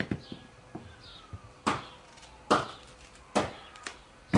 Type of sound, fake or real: real